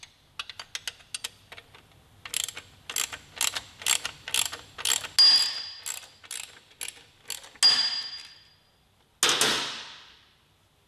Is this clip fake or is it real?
real